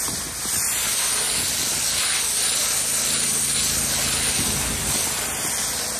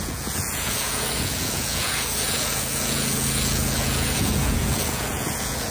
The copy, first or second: second